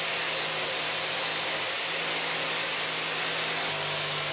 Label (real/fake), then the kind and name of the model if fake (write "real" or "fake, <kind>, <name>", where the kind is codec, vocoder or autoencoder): real